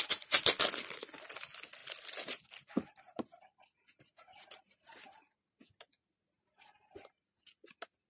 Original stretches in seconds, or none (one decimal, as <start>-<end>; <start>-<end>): 0.0-8.1